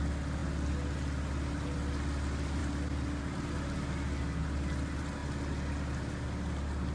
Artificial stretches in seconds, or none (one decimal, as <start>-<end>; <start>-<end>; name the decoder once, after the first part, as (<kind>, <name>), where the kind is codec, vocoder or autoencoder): none